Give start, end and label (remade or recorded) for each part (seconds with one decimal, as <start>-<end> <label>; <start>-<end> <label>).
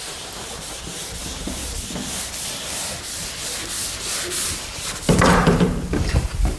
0.0-1.6 remade; 1.6-4.4 recorded; 4.4-6.6 remade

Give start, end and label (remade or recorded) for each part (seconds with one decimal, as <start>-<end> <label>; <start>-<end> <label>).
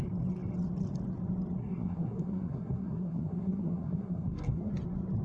0.0-1.6 recorded; 1.6-4.7 remade; 4.7-5.2 recorded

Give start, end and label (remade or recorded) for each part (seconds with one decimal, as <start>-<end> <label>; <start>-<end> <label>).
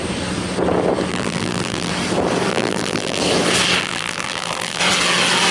0.0-1.1 recorded; 1.1-1.9 remade; 1.9-2.5 recorded; 2.5-3.2 remade; 3.2-3.8 recorded; 3.8-4.8 remade; 4.8-5.5 recorded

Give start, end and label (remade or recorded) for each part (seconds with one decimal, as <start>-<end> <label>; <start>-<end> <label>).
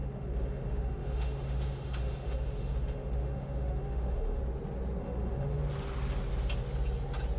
0.0-4.4 remade; 4.4-5.0 recorded; 5.0-5.6 remade; 5.6-7.4 recorded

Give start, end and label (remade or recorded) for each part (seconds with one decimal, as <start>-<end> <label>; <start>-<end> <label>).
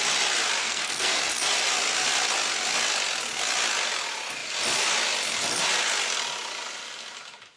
0.0-0.6 recorded; 0.6-1.2 remade; 1.2-7.6 recorded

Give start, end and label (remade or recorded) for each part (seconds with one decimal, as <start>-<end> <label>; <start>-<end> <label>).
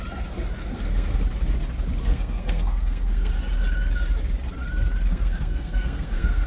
0.0-0.6 recorded; 0.6-1.2 remade; 1.2-2.1 recorded; 2.1-3.3 remade; 3.3-5.1 recorded; 5.1-6.5 remade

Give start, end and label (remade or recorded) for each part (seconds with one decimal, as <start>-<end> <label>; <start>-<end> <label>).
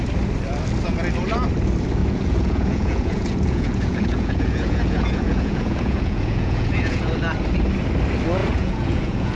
0.0-2.0 recorded; 2.0-7.0 remade; 7.0-8.4 recorded; 8.4-9.4 remade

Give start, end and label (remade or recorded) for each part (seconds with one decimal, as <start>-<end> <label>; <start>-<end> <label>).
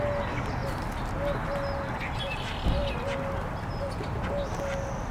0.0-5.1 recorded